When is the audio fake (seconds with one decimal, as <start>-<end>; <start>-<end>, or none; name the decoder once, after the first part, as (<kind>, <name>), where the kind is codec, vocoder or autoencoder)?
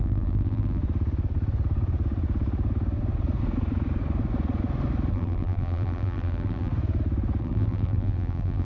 0.0-0.8 (vocoder, BigVGAN v2); 5.1-6.7; 7.4-8.6